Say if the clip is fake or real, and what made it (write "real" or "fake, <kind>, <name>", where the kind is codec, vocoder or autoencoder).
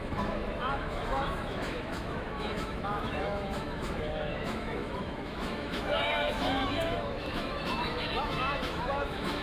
fake, autoencoder, DAC-VAE